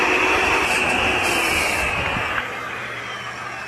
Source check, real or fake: real